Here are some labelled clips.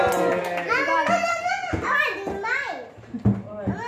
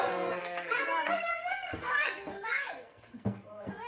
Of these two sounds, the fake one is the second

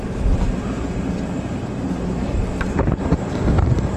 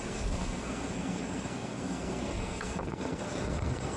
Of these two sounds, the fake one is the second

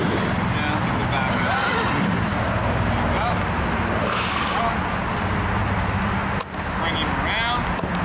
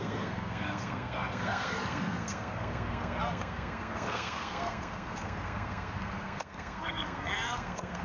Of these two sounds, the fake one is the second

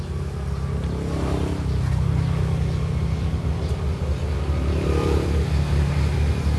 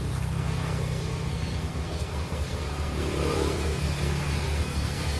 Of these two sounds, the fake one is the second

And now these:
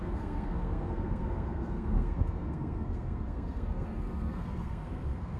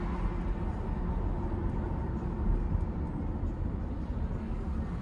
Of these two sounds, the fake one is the first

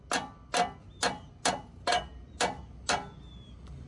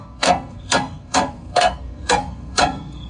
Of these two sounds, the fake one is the second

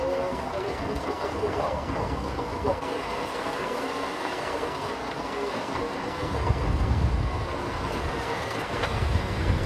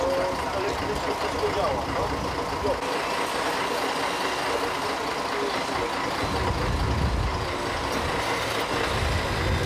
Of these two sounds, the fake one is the first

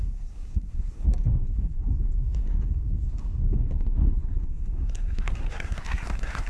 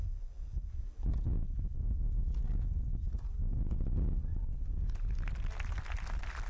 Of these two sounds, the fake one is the first